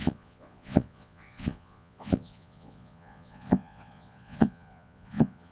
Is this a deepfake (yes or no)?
yes